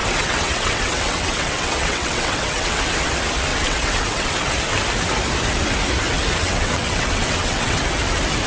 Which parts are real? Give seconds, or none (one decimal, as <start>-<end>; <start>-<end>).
2.8-3.5; 4.3-6.4; 7.8-8.5